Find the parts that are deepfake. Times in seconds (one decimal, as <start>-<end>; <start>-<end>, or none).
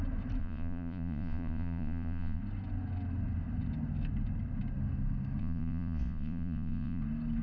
0.4-2.4; 5.4-7.0